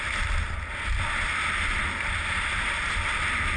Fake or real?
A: real